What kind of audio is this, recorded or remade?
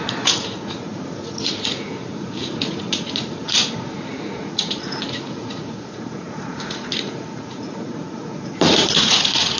remade